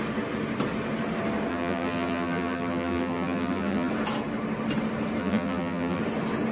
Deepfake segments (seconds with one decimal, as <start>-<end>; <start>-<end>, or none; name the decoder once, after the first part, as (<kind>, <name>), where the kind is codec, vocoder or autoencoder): 1.5-3.9 (vocoder, BigVGAN v2); 5.2-6.0